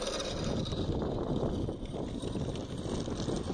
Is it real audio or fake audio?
real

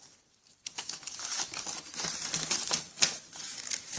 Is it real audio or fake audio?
real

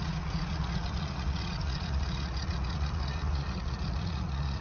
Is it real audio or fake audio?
fake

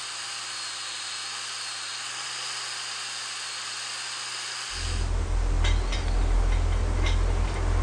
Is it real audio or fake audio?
real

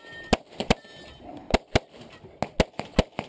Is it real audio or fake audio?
real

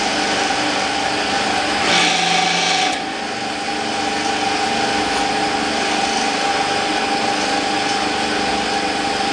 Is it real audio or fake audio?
real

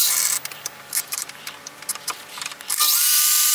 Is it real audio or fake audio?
fake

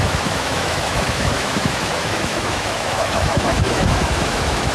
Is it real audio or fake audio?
fake